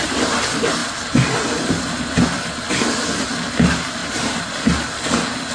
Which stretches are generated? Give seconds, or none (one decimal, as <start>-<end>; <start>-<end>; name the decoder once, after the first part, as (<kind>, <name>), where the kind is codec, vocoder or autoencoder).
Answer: 4.0-4.5 (vocoder, BigVGAN v2)